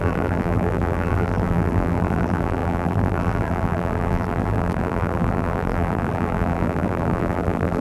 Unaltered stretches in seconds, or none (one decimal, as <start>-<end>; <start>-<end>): none